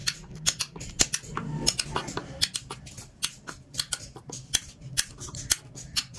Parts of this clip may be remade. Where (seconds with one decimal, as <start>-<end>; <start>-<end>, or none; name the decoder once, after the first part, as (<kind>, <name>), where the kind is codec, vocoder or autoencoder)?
2.2-5.6 (vocoder, BigVGAN v2)